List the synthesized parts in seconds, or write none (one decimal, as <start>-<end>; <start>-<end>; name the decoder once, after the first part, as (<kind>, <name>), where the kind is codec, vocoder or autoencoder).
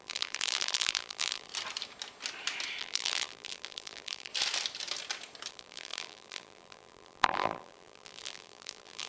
0.0-1.5 (vocoder, BigVGAN v2); 2.8-4.3; 5.5-9.1